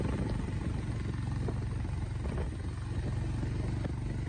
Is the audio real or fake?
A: real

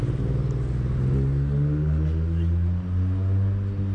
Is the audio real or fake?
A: real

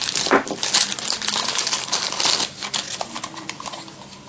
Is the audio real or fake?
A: real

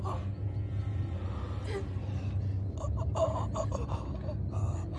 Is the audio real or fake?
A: real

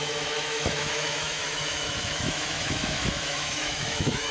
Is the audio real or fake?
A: fake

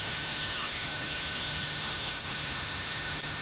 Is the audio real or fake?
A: fake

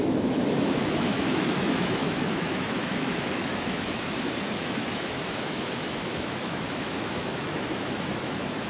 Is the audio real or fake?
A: fake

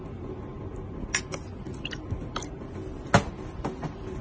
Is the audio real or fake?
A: real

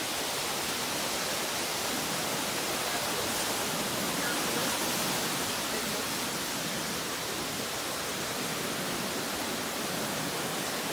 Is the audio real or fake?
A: real